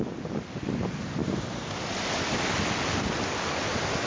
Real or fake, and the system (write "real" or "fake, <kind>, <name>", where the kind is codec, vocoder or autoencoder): real